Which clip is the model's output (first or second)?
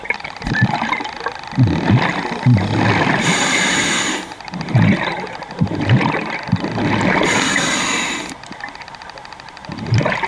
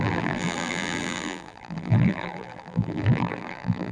second